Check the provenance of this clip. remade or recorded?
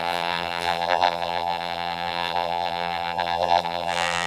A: remade